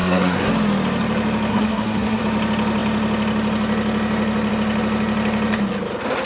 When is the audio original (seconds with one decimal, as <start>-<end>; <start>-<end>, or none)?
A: 0.5-1.5; 2.2-6.3